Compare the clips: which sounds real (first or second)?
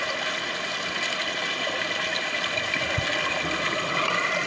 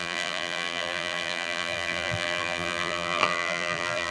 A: first